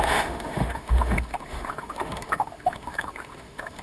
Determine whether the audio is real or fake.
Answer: fake